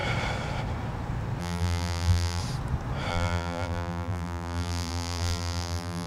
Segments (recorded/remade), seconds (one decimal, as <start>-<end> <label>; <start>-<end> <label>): 0.0-1.4 recorded; 1.4-2.4 remade; 2.4-3.1 recorded; 3.1-6.1 remade